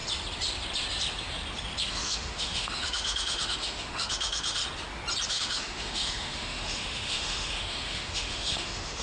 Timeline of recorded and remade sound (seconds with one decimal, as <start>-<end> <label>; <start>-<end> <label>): 0.0-1.9 recorded; 1.9-4.6 remade; 4.6-5.3 recorded; 5.3-9.0 remade